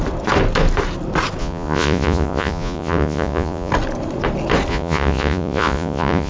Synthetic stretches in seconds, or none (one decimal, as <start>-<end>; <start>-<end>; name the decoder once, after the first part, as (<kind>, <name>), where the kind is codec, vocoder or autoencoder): 1.4-3.7 (vocoder, Vocos); 4.7-6.3